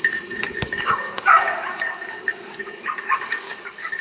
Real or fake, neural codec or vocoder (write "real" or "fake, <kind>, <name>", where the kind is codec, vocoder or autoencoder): fake, codec, DAC